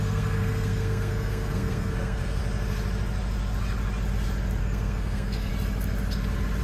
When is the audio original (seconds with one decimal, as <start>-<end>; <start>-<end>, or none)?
2.4-4.6; 5.5-6.6